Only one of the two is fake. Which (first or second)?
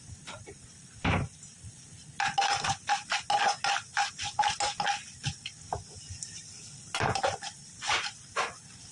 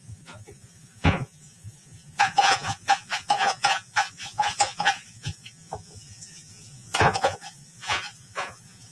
second